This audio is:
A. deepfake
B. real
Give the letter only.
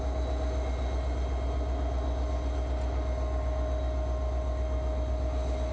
B